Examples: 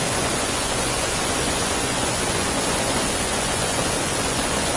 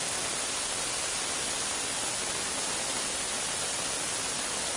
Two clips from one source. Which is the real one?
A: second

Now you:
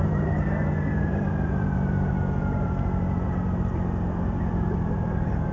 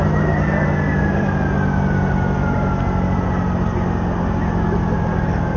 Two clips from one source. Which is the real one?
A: second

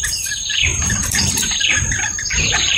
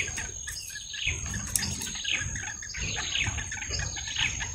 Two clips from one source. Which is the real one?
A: second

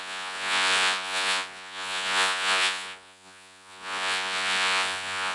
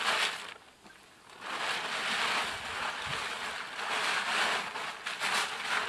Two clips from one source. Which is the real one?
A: second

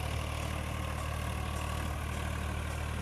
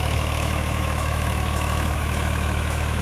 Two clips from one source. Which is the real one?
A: first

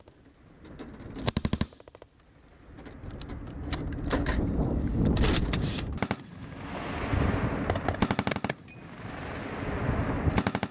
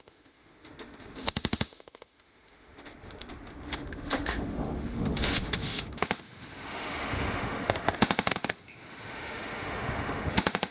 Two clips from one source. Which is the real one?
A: first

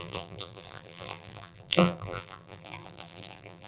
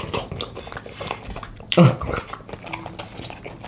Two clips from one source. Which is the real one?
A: second